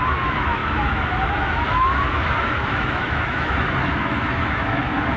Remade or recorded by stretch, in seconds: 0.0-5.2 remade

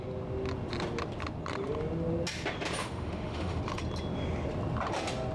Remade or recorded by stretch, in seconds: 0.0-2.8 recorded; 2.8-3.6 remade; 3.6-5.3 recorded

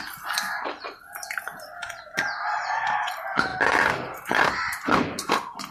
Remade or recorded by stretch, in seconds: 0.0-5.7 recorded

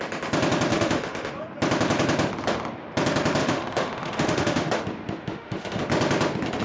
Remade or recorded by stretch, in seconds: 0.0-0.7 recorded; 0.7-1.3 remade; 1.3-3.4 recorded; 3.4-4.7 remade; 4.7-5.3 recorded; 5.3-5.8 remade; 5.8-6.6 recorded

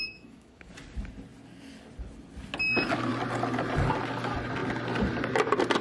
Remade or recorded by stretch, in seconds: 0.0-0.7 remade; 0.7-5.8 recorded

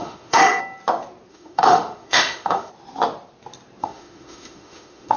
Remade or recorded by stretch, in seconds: 0.0-0.6 remade; 0.6-1.3 recorded; 1.3-2.7 remade; 2.7-3.8 recorded; 3.8-5.2 remade

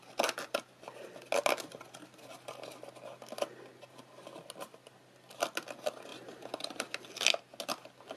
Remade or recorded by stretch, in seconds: 0.0-8.2 recorded